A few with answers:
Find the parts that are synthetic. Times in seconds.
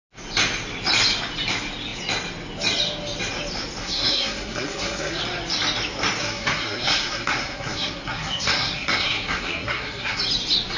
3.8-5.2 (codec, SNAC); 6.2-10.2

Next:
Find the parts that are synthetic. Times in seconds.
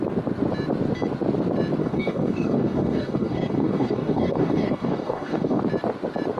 1.8-5.6 (codec, DAC)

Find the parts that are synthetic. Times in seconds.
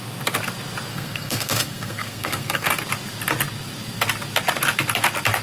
0.9-2.7 (codec, SNAC)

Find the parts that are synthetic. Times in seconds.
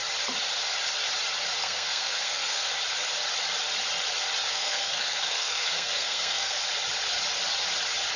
1.6-2.7 (codec, SNAC); 4.5-6.6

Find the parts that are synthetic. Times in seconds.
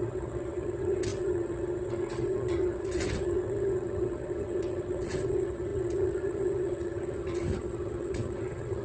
0.0-8.8 (vocoder, HiFi-GAN)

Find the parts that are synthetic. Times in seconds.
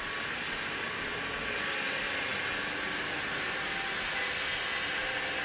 none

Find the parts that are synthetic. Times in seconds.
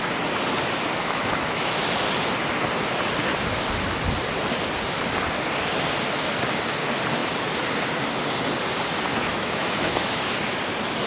1.0-1.8 (autoencoder, DAC-VAE); 9.3-10.2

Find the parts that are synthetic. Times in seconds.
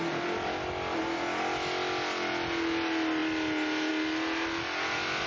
none